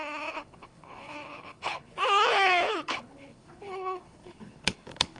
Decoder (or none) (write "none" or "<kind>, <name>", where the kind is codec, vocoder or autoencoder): codec, HILCodec